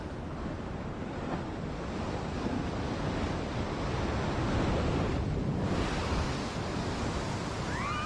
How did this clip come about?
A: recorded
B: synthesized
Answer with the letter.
A